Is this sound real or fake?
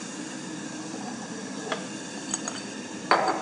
fake